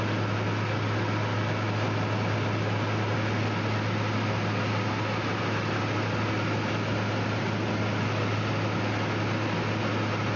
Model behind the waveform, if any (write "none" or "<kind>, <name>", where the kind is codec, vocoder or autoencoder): none